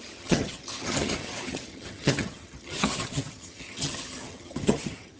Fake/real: fake